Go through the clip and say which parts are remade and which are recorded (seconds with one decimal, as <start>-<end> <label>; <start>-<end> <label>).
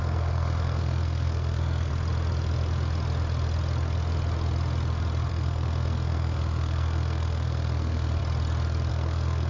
0.0-1.9 remade; 1.9-5.3 recorded; 5.3-8.2 remade; 8.2-8.9 recorded; 8.9-9.5 remade